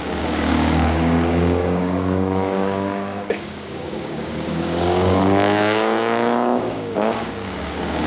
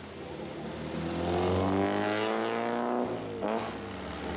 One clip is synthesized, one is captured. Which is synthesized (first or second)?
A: first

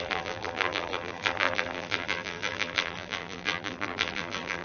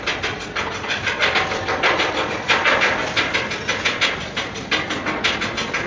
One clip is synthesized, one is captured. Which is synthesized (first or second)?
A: first